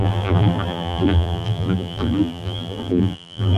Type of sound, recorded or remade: remade